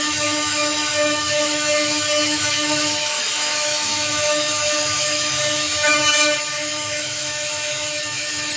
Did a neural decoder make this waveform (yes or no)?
yes